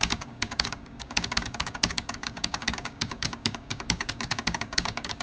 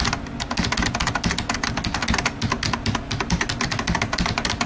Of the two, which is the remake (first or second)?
first